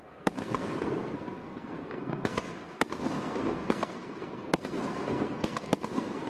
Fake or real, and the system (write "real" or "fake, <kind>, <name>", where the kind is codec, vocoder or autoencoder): fake, codec, SNAC